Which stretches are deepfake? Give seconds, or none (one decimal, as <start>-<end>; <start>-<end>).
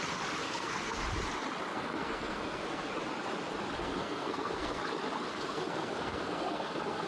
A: 0.4-1.0; 1.7-2.9; 3.8-4.8; 5.3-7.1